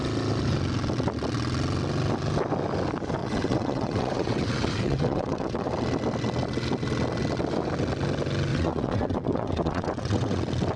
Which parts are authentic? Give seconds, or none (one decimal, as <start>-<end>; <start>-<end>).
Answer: 0.0-3.2; 5.7-8.5; 10.4-10.8